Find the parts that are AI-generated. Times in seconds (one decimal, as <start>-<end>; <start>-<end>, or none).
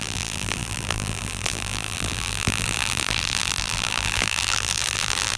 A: 0.0-5.4